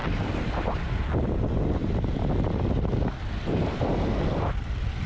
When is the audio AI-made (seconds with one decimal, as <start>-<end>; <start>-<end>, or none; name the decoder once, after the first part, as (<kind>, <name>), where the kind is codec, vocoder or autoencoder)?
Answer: none